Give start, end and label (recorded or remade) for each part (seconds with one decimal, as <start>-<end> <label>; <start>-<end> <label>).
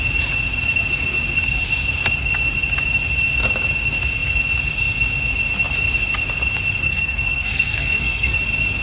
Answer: 0.0-6.8 recorded; 6.8-8.4 remade; 8.4-8.8 recorded